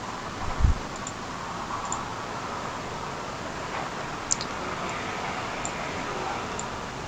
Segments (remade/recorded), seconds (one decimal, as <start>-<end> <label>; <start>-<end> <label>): 0.0-7.1 recorded